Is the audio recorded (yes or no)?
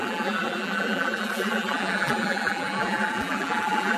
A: no